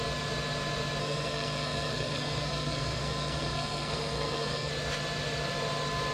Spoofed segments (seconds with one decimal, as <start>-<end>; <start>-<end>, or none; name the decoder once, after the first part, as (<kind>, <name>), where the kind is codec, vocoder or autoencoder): 1.0-4.7 (codec, SNAC)

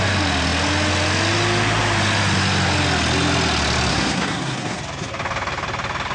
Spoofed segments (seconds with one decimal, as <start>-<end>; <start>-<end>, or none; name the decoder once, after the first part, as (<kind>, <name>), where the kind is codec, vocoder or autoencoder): 3.9-4.8 (codec, SNAC)

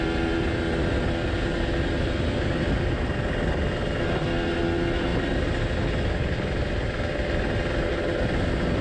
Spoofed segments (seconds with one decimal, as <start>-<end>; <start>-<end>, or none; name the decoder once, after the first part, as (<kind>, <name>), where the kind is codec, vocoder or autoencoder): none

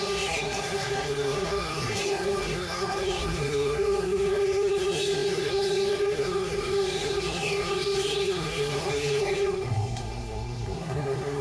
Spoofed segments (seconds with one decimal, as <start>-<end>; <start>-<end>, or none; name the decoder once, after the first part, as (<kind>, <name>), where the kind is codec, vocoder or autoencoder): 0.0-11.4 (codec, SNAC)

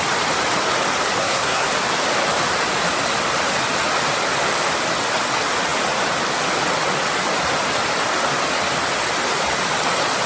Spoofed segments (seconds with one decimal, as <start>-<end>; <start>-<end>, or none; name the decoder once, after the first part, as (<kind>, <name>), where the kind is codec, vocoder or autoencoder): 1.2-1.7 (codec, SNAC)

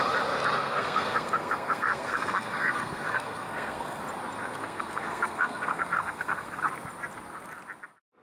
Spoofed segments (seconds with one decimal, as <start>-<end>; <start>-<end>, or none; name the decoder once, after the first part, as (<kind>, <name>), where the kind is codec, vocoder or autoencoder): 0.6-4.0 (codec, SNAC); 4.4-6.6

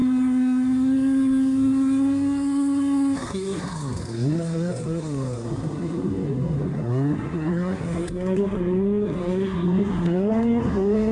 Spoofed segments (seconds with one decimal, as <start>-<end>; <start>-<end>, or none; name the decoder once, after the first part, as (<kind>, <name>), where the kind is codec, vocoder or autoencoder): 0.0-11.1 (codec, SNAC)

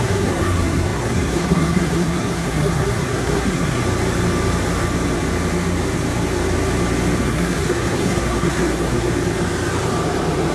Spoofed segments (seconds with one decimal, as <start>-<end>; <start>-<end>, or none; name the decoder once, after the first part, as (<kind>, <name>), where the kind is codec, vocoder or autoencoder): 0.0-3.8 (codec, SNAC); 7.2-9.1